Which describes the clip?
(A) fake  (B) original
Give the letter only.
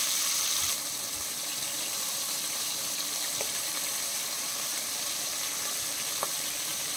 A